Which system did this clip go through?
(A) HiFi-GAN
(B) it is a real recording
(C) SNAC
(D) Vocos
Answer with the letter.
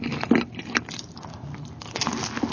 B